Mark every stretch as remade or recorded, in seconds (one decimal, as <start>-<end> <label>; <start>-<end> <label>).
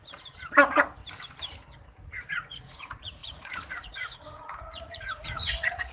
0.0-0.6 recorded; 0.6-1.0 remade; 1.0-2.3 recorded; 2.3-5.9 remade